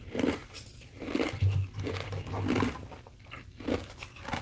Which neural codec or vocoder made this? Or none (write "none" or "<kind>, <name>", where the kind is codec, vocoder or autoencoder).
none